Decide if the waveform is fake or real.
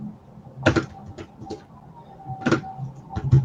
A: real